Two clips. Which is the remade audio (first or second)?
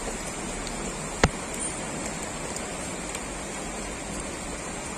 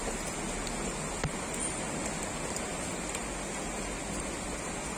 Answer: first